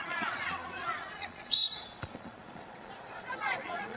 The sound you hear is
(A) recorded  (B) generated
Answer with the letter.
B